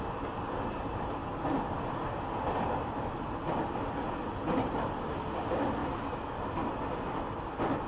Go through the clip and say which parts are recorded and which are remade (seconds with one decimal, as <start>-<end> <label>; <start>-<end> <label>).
0.0-1.2 remade; 1.2-4.3 recorded; 4.3-5.8 remade; 5.8-7.9 recorded